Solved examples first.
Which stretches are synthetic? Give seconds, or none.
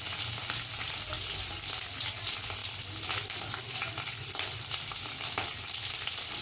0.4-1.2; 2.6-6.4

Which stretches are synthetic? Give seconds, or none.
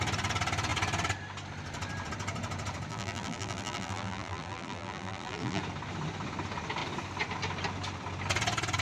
2.9-5.6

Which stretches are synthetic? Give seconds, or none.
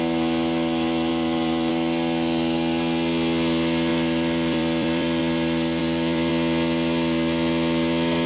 1.1-1.7; 3.9-5.2; 5.8-6.3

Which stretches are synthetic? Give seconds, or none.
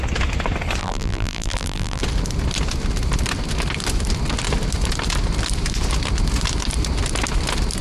0.8-2.0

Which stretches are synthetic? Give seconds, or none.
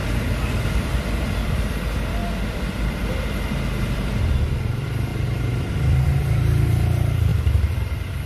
0.0-8.3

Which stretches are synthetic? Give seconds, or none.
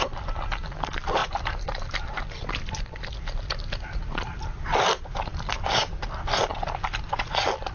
none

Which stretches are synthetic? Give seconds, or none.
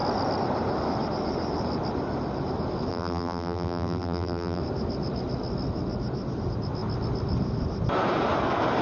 2.9-4.6